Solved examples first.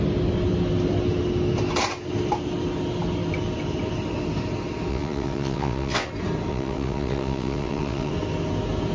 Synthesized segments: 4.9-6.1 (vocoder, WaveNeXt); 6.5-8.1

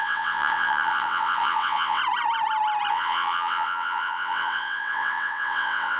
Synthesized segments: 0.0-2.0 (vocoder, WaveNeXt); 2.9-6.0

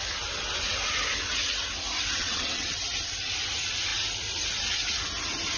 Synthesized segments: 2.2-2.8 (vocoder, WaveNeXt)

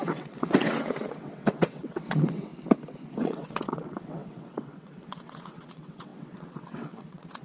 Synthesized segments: 0.0-2.5 (vocoder, WaveNeXt); 3.2-7.4